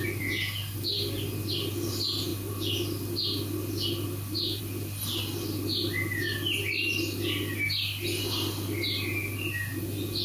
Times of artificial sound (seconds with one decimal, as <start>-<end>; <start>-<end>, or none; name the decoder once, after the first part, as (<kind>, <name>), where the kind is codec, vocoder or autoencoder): none

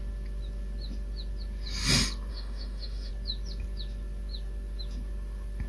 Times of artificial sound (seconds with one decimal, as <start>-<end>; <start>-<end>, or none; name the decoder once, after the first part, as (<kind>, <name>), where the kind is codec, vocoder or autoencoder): 2.3-3.1 (autoencoder, DAC-VAE)

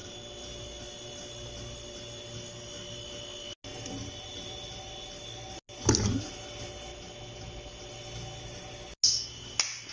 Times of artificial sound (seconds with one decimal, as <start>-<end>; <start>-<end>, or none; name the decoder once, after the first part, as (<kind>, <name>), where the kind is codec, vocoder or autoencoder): none

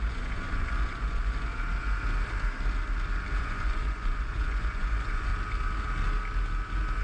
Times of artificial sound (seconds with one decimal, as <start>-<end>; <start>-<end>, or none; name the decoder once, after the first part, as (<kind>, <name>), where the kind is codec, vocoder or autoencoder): 0.0-1.5 (vocoder, Vocos); 3.4-5.3

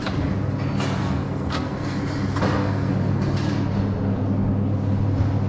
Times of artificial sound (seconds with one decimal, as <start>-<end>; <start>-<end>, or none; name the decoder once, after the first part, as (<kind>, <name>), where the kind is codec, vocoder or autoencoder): 1.0-2.0 (codec, SNAC); 2.6-3.1

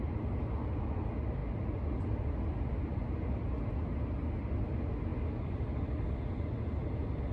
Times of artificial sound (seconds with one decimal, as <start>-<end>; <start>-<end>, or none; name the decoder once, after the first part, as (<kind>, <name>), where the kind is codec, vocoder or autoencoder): none

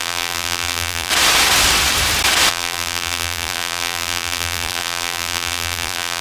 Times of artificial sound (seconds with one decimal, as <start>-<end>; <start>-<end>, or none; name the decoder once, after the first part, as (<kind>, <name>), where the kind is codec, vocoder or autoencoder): 0.0-1.1 (vocoder, BigVGAN v2); 2.5-6.2